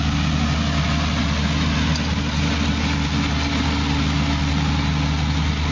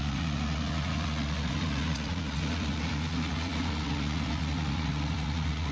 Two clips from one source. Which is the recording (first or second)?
first